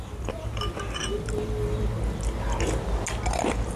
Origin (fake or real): real